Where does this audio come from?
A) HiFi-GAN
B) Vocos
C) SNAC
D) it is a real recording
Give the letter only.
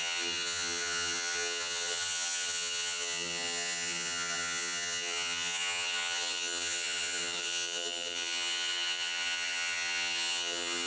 A